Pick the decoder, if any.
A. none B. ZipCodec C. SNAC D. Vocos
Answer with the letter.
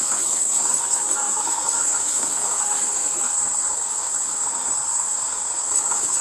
C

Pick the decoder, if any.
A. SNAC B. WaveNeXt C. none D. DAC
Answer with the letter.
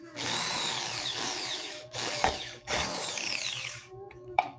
D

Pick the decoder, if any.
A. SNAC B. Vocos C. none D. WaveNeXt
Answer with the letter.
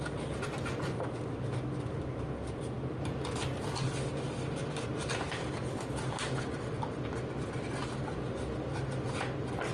C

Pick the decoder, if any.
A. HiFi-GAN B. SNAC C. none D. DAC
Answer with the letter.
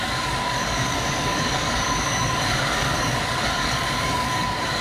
D